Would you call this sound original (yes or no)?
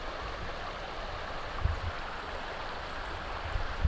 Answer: yes